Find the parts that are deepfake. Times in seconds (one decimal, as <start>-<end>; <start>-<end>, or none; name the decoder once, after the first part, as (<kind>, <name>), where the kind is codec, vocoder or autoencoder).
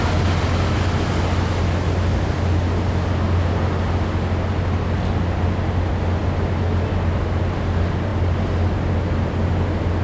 none